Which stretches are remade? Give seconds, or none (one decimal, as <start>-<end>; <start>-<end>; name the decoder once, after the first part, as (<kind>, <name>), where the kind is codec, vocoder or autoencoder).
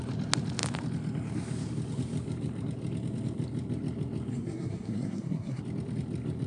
4.3-5.6 (codec, SNAC)